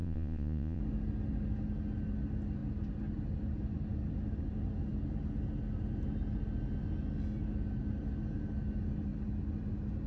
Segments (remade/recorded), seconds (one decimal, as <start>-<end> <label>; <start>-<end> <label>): 0.0-0.8 remade; 0.8-10.1 recorded